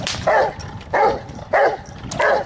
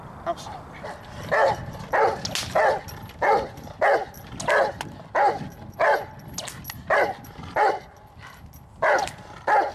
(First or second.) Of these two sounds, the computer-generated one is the first